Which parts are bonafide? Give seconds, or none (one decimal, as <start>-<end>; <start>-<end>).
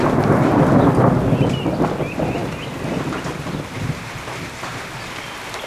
0.0-2.4; 3.0-5.7